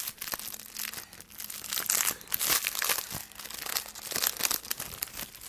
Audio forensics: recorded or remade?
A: recorded